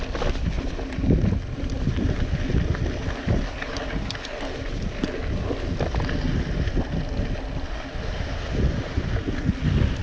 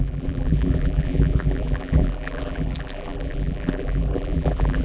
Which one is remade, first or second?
second